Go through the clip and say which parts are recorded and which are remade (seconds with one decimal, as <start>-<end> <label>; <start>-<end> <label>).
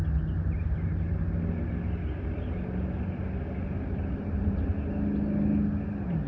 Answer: 0.0-3.8 recorded; 3.8-4.7 remade; 4.7-6.3 recorded